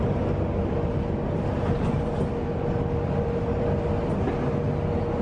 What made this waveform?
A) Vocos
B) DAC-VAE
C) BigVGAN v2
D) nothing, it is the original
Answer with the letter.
D